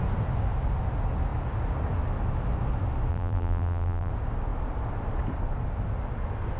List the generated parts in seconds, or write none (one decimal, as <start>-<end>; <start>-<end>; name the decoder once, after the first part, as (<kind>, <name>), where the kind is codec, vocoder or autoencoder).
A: 3.1-4.1 (vocoder, BigVGAN v2)

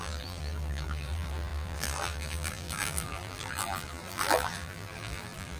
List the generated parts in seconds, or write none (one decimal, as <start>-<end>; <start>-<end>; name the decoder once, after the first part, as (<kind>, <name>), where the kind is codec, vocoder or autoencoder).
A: 0.0-5.6 (vocoder, BigVGAN v2)